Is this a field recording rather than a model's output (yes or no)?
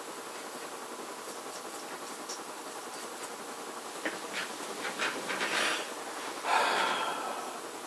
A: yes